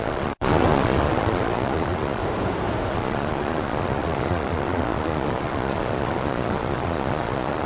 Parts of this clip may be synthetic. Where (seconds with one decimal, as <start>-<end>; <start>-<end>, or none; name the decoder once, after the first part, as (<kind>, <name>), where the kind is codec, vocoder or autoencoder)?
0.0-2.2 (vocoder, Vocos); 2.9-7.7